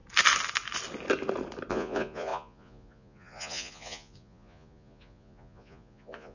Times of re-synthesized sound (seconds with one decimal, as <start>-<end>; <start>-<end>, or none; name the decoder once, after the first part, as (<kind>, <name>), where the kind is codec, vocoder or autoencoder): 1.7-6.3 (vocoder, Vocos)